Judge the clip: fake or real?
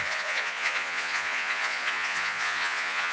fake